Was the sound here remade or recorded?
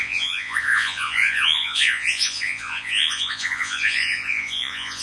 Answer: remade